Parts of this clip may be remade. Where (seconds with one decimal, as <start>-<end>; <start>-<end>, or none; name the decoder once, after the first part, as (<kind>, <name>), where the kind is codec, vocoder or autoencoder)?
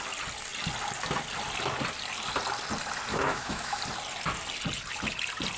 3.1-3.8 (autoencoder, DAC-VAE)